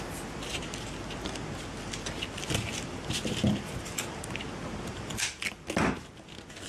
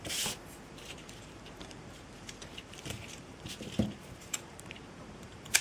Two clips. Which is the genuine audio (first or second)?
first